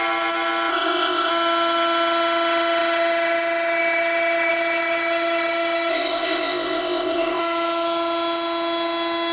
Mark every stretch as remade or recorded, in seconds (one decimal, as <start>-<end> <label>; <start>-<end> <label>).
0.0-0.7 recorded; 0.7-1.3 remade; 1.3-5.9 recorded; 5.9-7.4 remade; 7.4-9.3 recorded